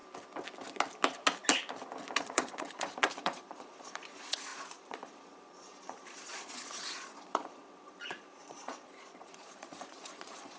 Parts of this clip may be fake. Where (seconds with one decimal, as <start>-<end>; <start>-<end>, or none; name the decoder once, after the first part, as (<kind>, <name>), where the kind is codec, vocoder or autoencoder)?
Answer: 2.2-10.6 (vocoder, Vocos)

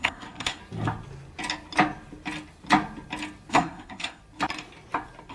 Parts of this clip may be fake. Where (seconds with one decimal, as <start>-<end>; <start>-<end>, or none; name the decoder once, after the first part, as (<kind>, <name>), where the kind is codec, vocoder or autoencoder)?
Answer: 0.0-0.6 (codec, SNAC); 3.5-4.2

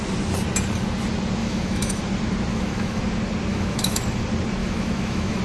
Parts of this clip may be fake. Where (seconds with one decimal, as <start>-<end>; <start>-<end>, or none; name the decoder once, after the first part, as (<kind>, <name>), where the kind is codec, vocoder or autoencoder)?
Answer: 1.4-2.0 (autoencoder, DAC-VAE); 2.5-3.0; 3.5-4.0; 4.6-5.4

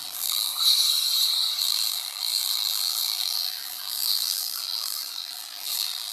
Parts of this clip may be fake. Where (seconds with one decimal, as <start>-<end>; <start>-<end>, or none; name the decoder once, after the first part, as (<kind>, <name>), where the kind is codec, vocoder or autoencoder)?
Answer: 0.0-0.5 (vocoder, BigVGAN v2); 1.6-6.1

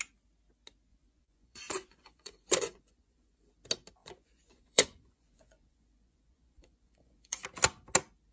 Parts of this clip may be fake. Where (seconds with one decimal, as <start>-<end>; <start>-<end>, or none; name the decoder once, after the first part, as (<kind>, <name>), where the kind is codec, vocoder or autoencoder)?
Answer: 0.9-3.5 (vocoder, Vocos); 4.0-7.4